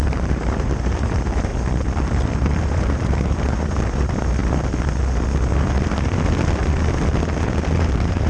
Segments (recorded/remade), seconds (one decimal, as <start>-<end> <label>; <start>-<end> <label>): 0.0-1.5 remade; 1.5-2.1 recorded; 2.1-4.4 remade; 4.4-7.9 recorded; 7.9-8.3 remade